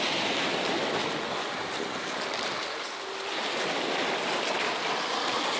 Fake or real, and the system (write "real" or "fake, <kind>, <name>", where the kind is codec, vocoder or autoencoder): real